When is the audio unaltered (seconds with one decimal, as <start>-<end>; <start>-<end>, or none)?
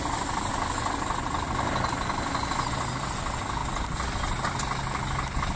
0.5-2.7; 3.6-5.6